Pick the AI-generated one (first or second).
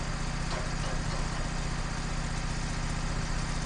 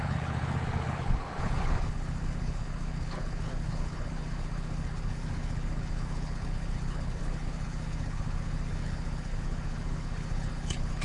second